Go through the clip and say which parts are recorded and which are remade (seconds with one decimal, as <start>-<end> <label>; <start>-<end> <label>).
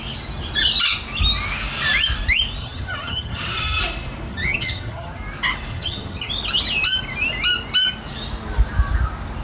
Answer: 0.0-2.6 recorded; 2.6-3.8 remade; 3.8-4.3 recorded; 4.3-5.2 remade; 5.2-5.7 recorded; 5.7-6.3 remade; 6.3-9.4 recorded